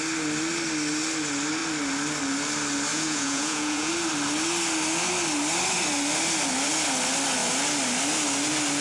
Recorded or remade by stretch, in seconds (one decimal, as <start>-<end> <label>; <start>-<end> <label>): 0.0-2.9 recorded; 2.9-3.9 remade; 3.9-8.8 recorded